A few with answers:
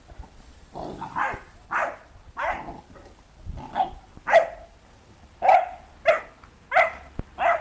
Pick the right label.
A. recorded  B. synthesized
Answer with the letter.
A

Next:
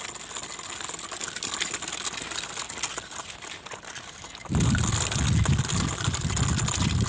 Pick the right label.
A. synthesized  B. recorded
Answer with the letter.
B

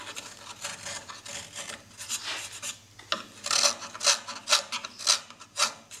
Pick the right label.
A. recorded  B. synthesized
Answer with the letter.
A